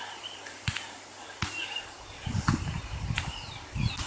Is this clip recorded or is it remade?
recorded